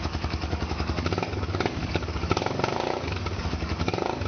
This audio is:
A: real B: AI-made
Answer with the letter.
B